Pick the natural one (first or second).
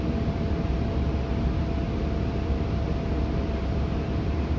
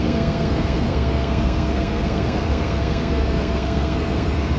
first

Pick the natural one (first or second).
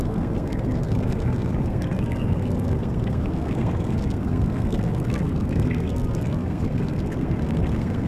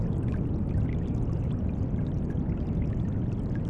second